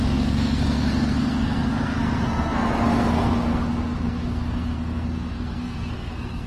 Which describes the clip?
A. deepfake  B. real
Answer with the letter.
A